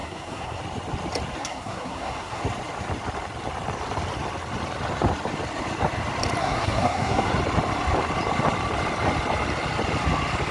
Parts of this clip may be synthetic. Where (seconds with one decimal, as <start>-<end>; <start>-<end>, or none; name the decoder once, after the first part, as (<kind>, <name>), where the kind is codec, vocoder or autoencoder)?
0.0-0.6 (codec, SNAC); 1.4-2.4; 6.4-7.3